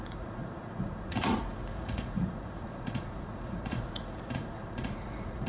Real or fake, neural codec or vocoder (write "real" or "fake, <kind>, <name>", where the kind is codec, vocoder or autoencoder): fake, vocoder, Vocos